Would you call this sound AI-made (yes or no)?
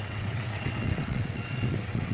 yes